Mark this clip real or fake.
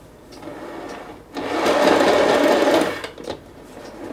fake